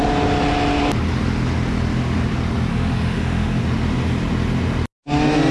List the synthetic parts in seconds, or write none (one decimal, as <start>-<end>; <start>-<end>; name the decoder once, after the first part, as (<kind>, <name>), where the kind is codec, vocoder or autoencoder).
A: 2.7-3.6 (autoencoder, DAC-VAE)